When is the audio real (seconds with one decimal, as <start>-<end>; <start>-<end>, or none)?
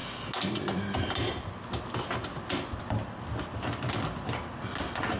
0.0-5.2